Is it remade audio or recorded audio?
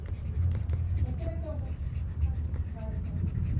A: recorded